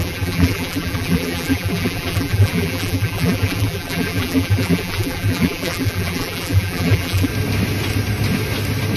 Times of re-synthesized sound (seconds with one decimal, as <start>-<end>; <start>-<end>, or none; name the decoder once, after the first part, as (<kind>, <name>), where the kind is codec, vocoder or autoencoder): 0.0-7.3 (vocoder, BigVGAN v2)